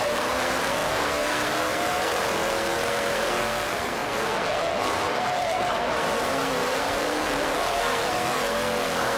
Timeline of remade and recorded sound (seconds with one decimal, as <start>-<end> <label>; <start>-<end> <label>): 0.0-9.2 remade